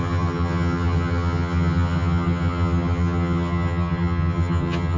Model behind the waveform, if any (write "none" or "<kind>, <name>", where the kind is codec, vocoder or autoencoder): vocoder, HiFi-GAN